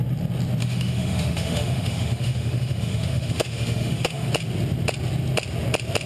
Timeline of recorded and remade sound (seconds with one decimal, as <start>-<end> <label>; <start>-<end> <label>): 0.0-0.6 recorded; 0.6-4.3 remade; 4.3-6.1 recorded